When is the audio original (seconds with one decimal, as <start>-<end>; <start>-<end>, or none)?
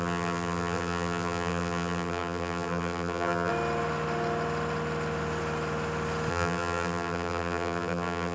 3.5-6.3